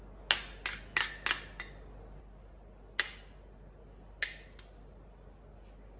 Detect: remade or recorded recorded